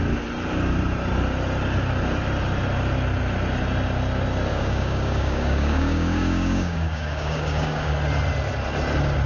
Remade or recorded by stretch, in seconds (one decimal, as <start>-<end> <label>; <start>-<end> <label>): 0.0-4.5 recorded; 4.5-7.9 remade; 7.9-9.3 recorded